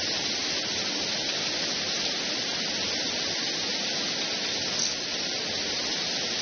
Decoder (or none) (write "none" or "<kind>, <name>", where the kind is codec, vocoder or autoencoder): none